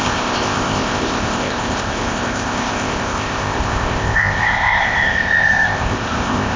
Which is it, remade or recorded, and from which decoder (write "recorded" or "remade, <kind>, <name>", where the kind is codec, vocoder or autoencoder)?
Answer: remade, codec, ZipCodec